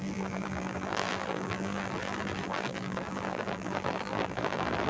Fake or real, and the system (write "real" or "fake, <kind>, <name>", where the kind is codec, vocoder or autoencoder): fake, vocoder, BigVGAN v2